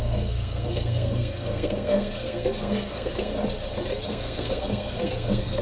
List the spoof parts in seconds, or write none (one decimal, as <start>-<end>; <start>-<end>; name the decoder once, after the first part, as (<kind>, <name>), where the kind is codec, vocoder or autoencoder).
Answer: 0.0-3.3 (codec, SNAC); 4.1-5.6